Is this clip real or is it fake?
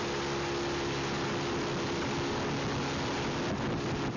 real